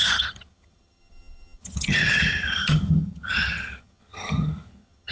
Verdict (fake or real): fake